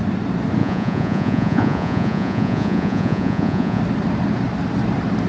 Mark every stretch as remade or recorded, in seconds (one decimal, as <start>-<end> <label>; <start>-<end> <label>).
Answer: 0.0-0.6 recorded; 0.6-3.8 remade; 3.8-5.3 recorded

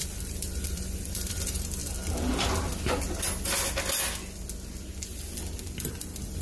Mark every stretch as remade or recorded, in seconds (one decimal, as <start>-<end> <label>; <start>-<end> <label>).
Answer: 0.0-1.8 remade; 1.8-5.6 recorded; 5.6-6.4 remade